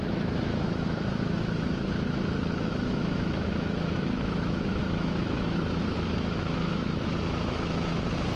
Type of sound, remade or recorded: remade